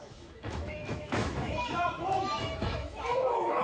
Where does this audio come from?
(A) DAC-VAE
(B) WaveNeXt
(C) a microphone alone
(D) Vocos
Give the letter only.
A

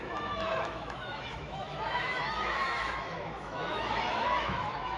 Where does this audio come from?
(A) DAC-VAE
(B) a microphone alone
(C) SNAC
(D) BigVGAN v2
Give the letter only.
A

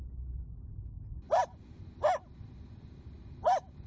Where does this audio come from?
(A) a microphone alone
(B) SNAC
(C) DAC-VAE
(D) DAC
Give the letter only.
A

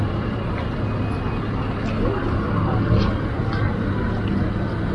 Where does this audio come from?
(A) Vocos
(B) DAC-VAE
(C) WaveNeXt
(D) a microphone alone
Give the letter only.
D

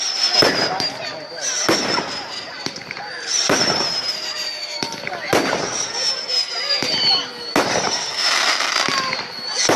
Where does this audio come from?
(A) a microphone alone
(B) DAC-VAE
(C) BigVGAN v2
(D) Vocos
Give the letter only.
A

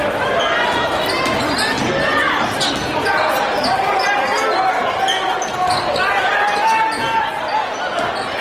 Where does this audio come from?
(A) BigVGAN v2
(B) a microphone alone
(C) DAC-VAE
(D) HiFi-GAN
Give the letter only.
B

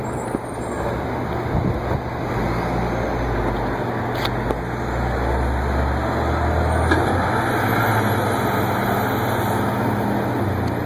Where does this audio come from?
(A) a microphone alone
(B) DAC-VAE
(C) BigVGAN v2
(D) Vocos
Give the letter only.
A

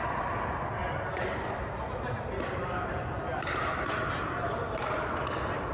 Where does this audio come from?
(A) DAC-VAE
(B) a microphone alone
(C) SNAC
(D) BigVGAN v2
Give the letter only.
B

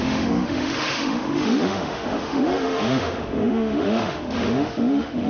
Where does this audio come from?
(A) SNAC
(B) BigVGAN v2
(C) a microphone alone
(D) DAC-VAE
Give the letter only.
D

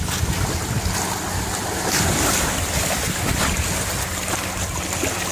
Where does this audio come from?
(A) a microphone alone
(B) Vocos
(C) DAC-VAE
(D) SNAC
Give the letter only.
A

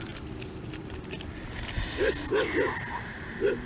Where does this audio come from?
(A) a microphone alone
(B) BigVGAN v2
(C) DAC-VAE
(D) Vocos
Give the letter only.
A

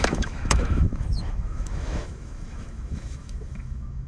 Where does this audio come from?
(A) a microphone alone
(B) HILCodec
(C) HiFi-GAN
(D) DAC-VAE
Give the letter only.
D